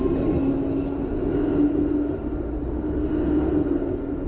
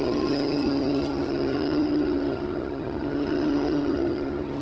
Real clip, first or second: first